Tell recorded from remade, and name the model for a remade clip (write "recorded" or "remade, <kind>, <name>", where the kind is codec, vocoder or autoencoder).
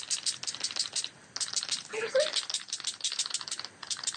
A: recorded